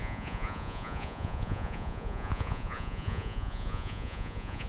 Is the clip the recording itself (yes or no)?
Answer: no